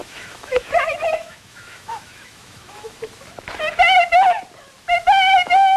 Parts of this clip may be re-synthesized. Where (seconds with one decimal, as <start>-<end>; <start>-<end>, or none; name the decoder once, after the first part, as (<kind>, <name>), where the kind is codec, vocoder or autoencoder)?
0.0-3.0 (autoencoder, DAC-VAE)